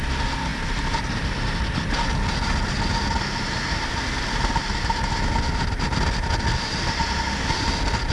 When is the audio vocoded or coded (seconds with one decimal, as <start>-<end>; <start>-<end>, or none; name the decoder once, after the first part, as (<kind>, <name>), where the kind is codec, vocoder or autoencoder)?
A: none